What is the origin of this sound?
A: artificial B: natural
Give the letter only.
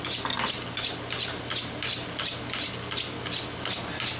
B